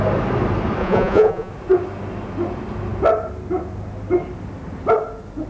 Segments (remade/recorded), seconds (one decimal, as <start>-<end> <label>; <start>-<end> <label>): 0.0-0.8 recorded; 0.8-1.5 remade; 1.5-5.5 recorded